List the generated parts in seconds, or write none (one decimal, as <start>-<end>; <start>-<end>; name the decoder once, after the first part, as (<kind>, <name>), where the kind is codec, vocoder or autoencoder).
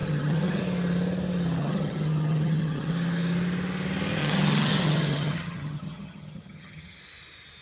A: 0.0-0.6 (vocoder, HiFi-GAN); 1.6-2.9; 4.2-7.0